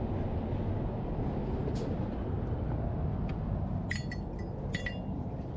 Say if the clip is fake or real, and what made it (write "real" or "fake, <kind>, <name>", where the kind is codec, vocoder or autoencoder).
real